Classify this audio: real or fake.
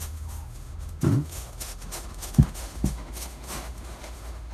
fake